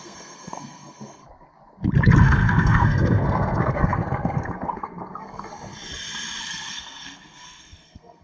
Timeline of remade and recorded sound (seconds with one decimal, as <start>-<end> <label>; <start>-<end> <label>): 0.0-1.2 remade; 1.2-2.2 recorded; 2.2-5.5 remade; 5.5-6.4 recorded; 6.4-8.2 remade